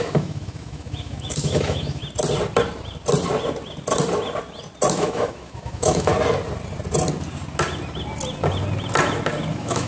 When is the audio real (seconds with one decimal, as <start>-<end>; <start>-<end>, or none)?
2.0-4.9; 6.1-9.5

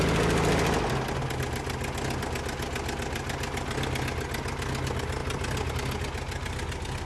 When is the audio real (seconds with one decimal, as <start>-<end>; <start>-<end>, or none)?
0.0-7.1

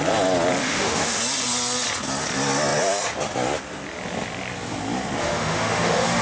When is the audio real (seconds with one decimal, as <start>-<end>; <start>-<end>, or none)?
0.0-0.6; 1.2-5.2

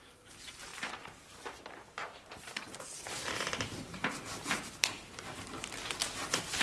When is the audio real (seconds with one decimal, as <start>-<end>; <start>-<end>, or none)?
none

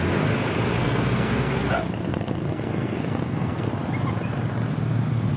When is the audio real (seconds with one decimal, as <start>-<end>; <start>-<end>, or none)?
0.0-0.8; 1.6-2.1; 3.7-5.4

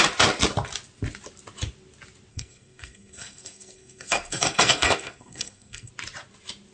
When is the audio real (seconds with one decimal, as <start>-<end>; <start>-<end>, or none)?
0.0-2.3; 5.9-6.7